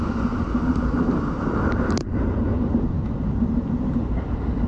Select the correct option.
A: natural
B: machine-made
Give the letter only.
B